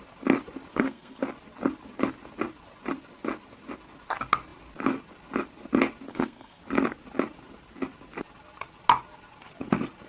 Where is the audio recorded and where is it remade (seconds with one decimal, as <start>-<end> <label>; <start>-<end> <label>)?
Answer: 0.0-0.7 recorded; 0.7-1.2 remade; 1.2-6.1 recorded; 6.1-6.6 remade; 6.6-10.1 recorded